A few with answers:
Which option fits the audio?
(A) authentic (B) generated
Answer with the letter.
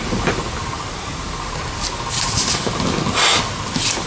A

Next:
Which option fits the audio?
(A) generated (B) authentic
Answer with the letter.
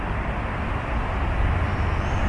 B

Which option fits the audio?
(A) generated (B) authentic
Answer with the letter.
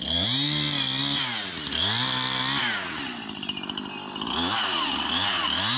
B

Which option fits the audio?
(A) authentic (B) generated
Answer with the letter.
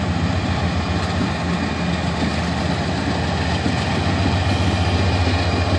A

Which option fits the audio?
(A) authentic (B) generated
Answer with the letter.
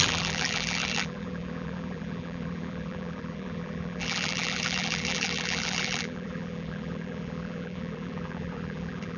B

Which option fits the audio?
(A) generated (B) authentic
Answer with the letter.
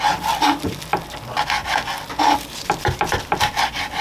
B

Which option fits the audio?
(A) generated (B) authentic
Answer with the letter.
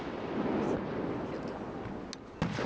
B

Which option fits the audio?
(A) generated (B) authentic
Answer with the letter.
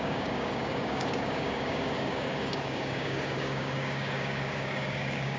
A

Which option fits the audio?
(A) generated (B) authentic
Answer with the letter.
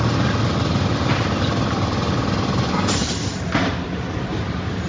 A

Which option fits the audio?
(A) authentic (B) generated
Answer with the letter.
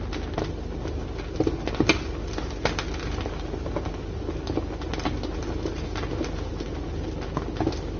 A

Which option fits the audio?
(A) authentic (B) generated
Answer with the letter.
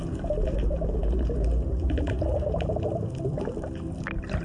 A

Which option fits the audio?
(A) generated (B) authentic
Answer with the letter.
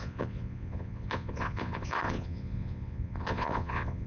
A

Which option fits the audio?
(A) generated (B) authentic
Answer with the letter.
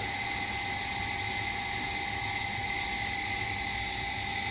B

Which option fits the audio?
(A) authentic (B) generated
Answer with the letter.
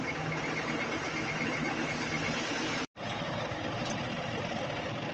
A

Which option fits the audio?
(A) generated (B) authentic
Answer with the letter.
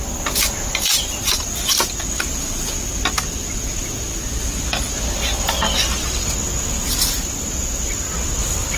B